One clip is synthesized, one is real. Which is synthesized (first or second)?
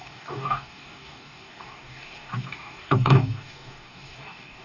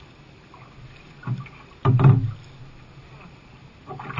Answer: first